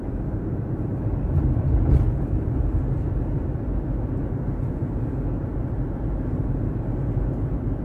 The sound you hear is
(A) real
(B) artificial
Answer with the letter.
A